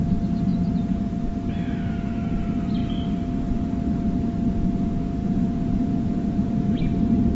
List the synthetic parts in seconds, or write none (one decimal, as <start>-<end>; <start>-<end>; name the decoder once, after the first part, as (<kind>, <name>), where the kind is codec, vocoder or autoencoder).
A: 0.5-1.1 (vocoder, Vocos); 5.2-6.8